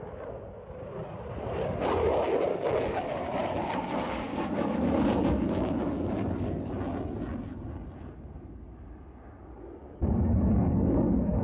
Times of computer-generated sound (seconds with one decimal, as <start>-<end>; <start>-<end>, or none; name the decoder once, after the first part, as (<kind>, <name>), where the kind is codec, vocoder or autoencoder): 2.5-6.7 (codec, DAC); 9.8-11.4

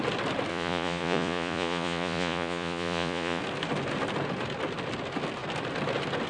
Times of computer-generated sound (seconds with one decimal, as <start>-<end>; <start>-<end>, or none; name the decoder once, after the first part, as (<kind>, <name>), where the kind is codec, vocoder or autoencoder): 0.5-3.4 (vocoder, Vocos)

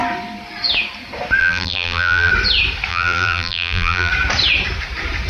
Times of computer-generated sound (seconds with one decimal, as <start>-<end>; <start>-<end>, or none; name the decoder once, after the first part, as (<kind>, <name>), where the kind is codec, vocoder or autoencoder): 1.4-2.3 (vocoder, BigVGAN v2); 2.9-4.1

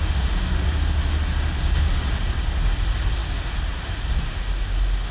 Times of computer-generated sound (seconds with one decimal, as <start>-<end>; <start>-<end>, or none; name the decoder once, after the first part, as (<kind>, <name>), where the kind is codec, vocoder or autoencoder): none

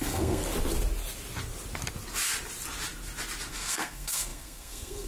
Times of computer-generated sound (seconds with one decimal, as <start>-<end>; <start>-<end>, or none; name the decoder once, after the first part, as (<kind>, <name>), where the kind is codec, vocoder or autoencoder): 0.0-0.4 (codec, SNAC); 3.5-5.1

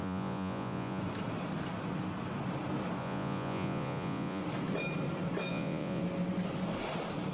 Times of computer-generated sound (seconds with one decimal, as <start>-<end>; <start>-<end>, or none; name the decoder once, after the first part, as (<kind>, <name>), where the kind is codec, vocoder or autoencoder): 0.0-1.0 (vocoder, Vocos); 3.0-4.4; 5.5-6.0